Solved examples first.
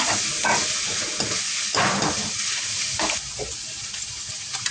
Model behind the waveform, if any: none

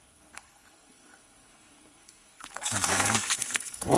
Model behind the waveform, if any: codec, SNAC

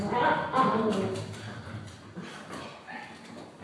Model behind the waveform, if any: none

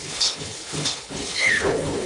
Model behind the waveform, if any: codec, HILCodec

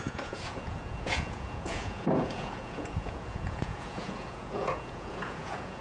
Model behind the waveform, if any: vocoder, Vocos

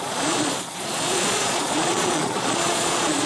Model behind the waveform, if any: vocoder, Vocos